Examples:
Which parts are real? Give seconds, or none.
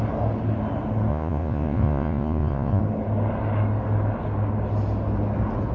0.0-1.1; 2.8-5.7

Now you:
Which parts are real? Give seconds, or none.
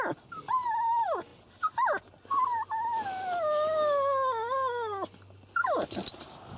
0.0-6.6